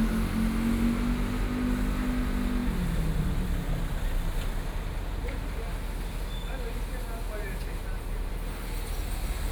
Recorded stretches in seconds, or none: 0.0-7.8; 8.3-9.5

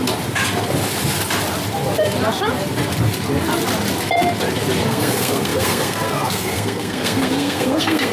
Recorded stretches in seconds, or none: 0.0-4.9

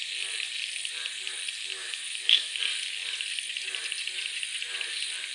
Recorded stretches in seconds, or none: 0.0-1.7; 2.6-5.3

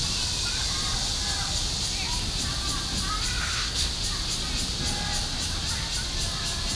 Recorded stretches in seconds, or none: 0.0-3.4; 3.9-6.7